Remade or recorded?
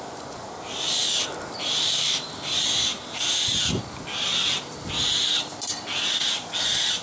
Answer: remade